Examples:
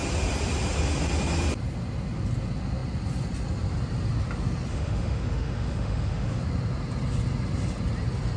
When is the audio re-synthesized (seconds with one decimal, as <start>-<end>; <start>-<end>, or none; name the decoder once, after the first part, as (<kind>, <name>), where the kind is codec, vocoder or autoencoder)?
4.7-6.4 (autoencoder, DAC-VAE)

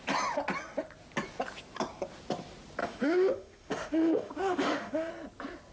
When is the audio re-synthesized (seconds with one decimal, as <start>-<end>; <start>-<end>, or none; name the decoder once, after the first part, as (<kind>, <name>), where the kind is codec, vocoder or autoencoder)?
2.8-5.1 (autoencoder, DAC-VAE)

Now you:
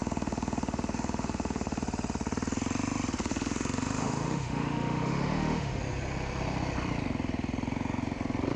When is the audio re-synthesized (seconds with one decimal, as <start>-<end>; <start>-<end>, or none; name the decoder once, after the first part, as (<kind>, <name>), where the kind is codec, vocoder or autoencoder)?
0.0-1.8 (autoencoder, DAC-VAE); 3.2-5.8

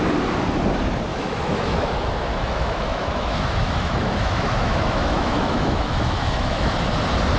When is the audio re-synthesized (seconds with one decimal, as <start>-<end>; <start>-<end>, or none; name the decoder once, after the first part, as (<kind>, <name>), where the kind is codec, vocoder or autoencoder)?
1.1-1.9 (autoencoder, DAC-VAE); 2.3-6.7

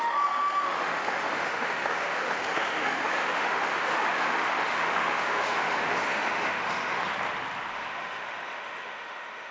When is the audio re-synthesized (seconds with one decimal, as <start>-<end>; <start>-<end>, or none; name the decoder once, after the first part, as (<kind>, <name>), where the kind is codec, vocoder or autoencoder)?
0.0-7.0 (autoencoder, DAC-VAE); 7.7-9.5

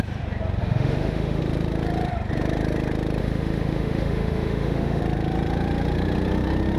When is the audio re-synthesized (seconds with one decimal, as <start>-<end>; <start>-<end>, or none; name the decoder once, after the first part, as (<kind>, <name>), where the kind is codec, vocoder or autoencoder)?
0.6-1.4 (autoencoder, DAC-VAE); 3.2-5.0

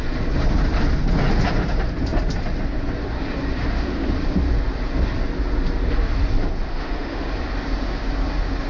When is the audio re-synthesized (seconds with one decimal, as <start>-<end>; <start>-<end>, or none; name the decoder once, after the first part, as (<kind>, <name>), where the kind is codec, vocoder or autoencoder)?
3.6-4.1 (autoencoder, DAC-VAE); 6.7-7.3